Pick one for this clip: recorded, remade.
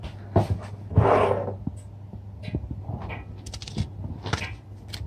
recorded